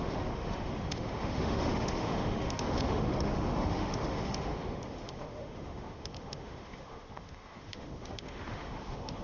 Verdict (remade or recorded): remade